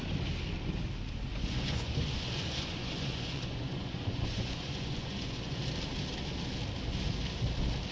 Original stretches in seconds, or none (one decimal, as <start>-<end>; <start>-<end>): 0.0-1.3; 5.6-7.9

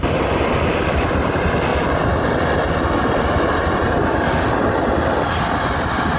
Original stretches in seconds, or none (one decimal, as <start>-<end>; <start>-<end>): 0.0-6.2

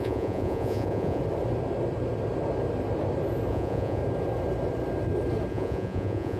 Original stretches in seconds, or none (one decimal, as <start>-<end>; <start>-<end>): 1.2-3.5; 4.0-5.5